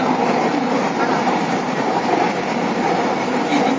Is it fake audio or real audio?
fake